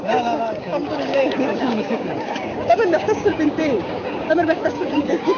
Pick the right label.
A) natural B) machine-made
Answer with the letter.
B